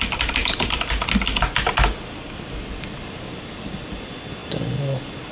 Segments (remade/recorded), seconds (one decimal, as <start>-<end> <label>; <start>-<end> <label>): 0.0-5.3 recorded